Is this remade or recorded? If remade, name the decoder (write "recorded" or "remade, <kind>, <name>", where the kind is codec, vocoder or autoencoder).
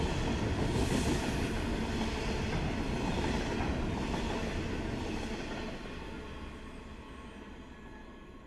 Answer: recorded